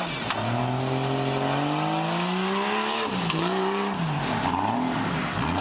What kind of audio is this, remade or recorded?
recorded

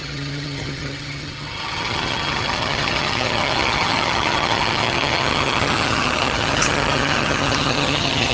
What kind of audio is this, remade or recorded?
remade